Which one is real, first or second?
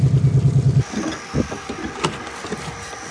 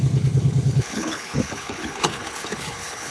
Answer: first